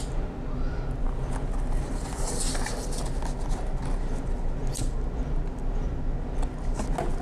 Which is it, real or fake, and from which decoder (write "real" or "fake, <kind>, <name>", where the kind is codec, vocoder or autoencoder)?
real